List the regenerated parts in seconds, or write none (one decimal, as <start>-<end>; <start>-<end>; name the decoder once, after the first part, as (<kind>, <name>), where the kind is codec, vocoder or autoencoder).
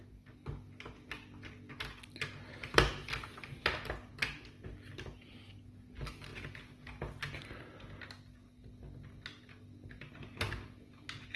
none